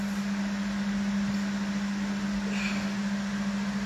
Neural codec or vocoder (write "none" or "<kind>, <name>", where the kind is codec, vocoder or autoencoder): none